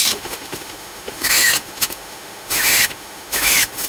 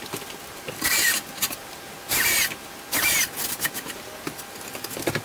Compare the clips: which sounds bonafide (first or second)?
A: second